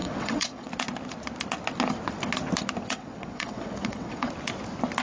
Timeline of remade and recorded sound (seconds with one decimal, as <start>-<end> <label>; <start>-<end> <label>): 0.0-0.7 remade; 0.7-2.8 recorded; 2.8-4.3 remade; 4.3-5.0 recorded